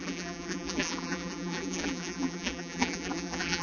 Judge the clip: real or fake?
fake